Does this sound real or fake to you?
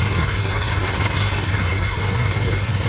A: fake